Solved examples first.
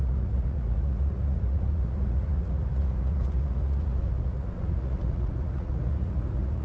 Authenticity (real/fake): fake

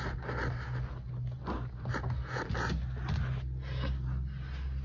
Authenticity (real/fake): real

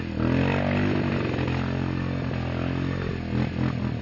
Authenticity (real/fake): real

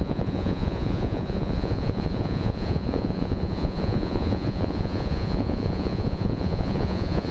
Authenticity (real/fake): fake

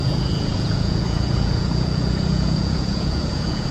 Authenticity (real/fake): fake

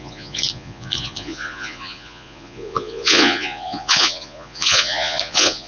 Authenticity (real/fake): fake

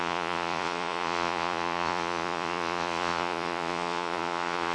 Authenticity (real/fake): fake